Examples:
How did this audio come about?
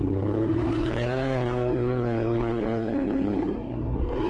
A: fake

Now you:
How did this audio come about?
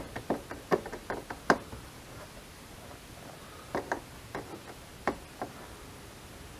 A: real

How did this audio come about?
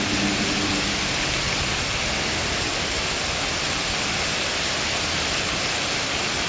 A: real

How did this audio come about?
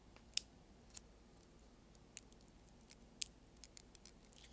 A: real